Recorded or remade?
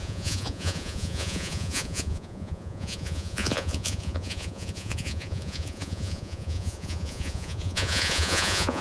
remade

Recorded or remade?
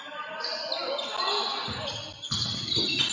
recorded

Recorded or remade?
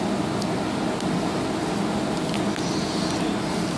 recorded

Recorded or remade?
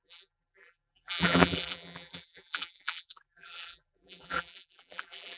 remade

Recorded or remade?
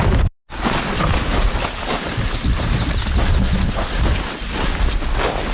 recorded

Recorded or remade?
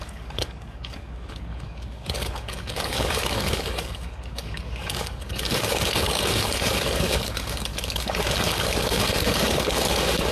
remade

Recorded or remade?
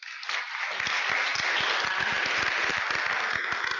recorded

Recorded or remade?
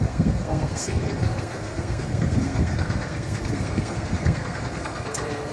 remade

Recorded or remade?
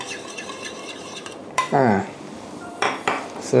remade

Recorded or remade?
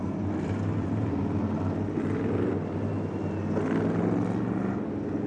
recorded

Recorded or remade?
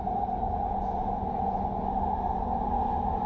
recorded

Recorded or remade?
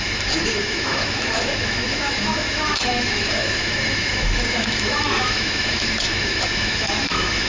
remade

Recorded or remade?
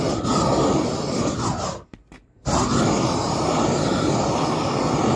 recorded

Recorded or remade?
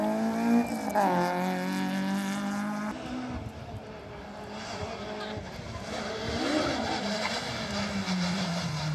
recorded